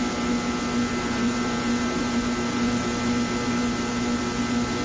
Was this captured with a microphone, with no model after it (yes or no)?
yes